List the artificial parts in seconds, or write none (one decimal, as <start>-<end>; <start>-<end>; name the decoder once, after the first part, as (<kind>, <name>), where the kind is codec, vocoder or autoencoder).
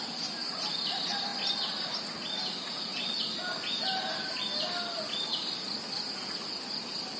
none